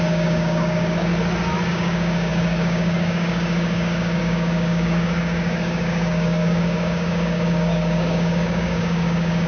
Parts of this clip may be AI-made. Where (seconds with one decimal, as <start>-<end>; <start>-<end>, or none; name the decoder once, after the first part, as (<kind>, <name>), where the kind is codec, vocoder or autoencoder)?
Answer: 0.0-1.1 (codec, DAC); 1.7-9.5